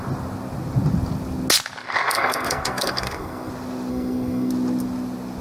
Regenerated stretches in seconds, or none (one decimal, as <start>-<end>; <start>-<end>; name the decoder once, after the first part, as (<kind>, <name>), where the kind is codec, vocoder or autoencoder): 1.8-3.5 (codec, SNAC); 3.9-4.5